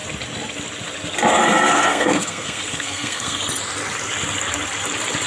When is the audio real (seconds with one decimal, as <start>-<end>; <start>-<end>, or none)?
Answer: 0.0-1.7; 3.4-5.3